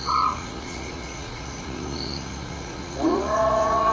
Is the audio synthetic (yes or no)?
yes